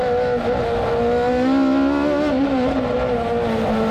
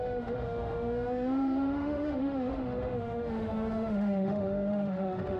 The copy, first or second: second